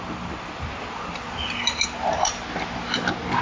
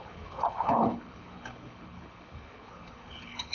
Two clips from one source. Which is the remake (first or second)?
second